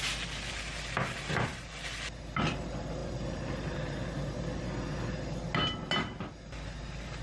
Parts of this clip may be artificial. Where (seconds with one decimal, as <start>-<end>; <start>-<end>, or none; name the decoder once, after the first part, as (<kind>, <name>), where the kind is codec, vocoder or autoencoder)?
none

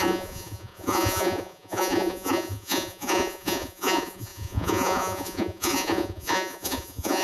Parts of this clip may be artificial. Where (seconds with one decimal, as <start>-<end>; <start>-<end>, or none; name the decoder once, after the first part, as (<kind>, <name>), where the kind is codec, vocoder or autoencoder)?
0.0-7.2 (vocoder, Vocos)

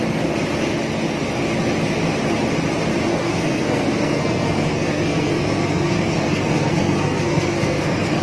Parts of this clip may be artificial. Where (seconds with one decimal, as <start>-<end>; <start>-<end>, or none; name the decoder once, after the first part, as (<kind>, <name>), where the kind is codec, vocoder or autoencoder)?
3.1-8.2 (codec, SNAC)